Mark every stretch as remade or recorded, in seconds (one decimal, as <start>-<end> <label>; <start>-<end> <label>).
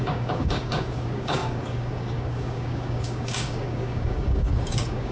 0.0-5.1 remade